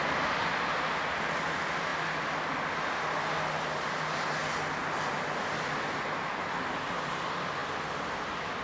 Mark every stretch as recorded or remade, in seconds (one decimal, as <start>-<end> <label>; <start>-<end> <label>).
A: 0.0-8.6 recorded